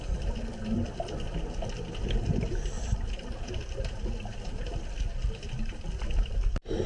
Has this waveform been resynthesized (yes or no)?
no